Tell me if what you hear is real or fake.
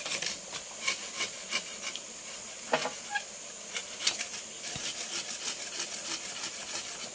real